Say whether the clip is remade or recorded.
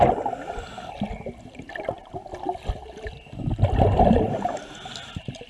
recorded